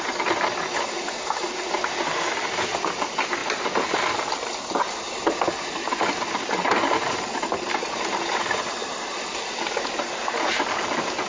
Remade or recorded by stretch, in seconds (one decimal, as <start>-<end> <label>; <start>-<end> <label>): 0.0-11.3 recorded